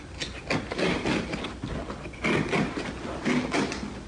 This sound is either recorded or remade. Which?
recorded